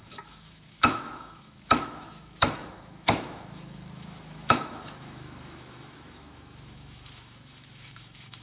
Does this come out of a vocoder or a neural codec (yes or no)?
yes